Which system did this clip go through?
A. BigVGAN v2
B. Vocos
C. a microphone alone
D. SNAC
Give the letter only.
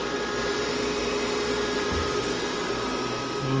C